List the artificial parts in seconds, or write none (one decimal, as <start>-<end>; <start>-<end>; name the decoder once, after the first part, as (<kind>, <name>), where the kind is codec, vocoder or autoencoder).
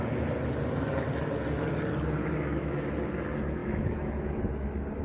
2.2-2.9 (autoencoder, DAC-VAE); 3.6-4.4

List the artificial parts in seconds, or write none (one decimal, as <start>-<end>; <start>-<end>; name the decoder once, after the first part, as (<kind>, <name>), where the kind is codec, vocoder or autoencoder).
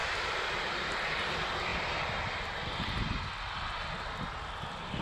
0.0-0.9 (vocoder, BigVGAN v2); 1.7-2.7